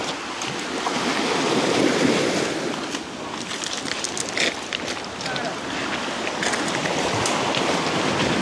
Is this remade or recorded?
recorded